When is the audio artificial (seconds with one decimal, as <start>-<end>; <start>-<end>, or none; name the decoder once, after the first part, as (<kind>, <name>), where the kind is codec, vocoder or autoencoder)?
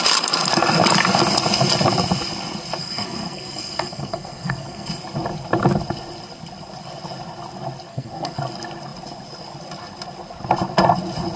2.8-4.9 (codec, SNAC); 7.9-8.4